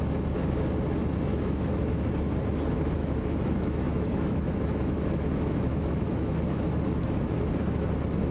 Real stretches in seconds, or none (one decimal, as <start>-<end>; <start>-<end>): 0.0-1.3; 1.8-3.0; 7.9-8.3